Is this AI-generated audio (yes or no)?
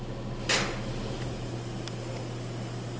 no